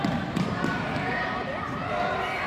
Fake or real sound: real